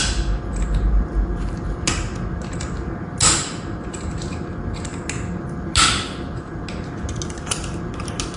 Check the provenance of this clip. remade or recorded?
recorded